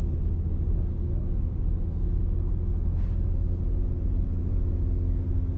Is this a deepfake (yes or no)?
no